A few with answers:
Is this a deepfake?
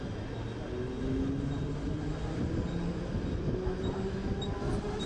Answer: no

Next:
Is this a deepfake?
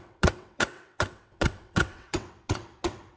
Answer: yes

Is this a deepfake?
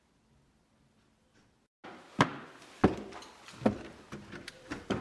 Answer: no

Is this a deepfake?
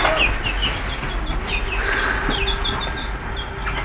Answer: no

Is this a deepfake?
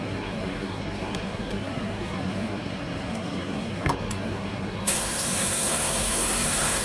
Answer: yes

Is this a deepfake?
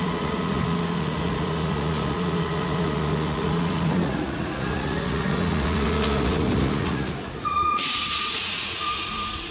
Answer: yes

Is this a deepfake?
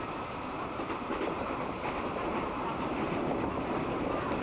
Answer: yes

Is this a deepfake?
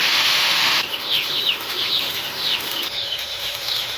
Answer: yes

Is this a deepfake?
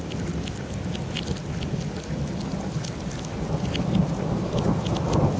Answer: no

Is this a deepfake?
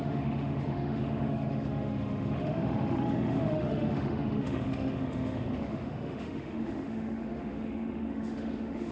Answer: yes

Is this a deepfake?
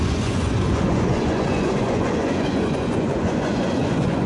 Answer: yes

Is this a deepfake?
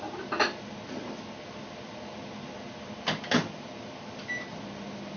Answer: no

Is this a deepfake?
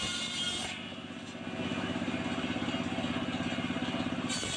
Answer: no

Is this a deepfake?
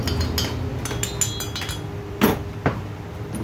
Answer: no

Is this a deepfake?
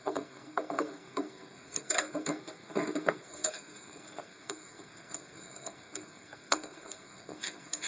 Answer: yes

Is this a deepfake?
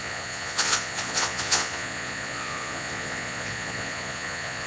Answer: yes